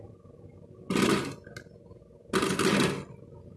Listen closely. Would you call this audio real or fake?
real